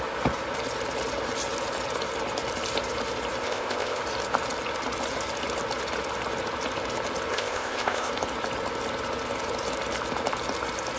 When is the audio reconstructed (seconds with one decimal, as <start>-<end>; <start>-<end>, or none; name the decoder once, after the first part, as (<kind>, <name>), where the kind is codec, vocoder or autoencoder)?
3.4-4.0 (codec, ZipCodec); 7.3-8.1